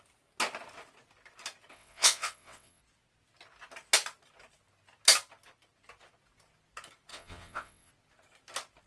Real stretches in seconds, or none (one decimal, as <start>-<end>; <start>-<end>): 0.0-1.7; 2.8-7.1; 7.9-8.9